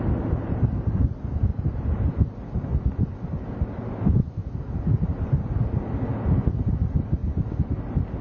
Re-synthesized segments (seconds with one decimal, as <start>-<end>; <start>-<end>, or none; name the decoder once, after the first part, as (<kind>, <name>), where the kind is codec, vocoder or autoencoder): 1.5-2.2 (vocoder, BigVGAN v2); 5.1-5.6